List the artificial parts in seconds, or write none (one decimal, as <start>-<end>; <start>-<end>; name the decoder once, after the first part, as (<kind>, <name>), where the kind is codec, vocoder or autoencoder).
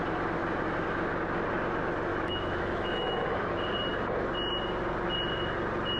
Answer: 2.1-3.5 (autoencoder, DAC-VAE)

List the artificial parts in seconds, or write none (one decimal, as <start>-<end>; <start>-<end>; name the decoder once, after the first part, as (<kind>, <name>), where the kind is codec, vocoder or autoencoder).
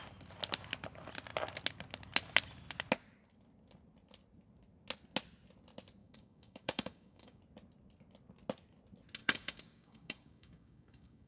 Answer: 6.0-7.4 (codec, DAC); 9.2-11.3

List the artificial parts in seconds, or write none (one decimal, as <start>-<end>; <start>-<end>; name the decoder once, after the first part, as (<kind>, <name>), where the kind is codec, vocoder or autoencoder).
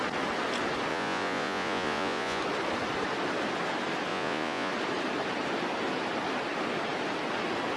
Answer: 0.9-2.4 (vocoder, Vocos); 4.1-4.7